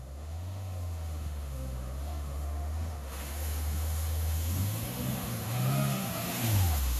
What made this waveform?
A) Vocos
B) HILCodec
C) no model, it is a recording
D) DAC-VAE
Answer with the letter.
D